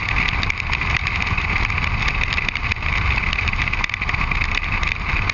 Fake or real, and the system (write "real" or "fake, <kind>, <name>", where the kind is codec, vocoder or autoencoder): real